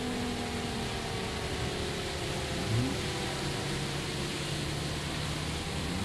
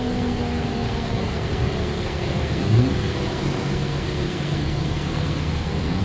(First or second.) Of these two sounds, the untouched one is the first